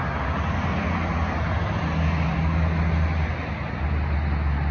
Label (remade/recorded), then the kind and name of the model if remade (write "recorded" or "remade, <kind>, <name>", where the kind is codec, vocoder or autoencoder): recorded